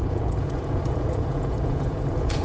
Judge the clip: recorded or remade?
remade